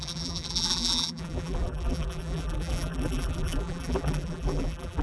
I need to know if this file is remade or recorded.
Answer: remade